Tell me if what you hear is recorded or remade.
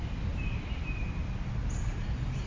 recorded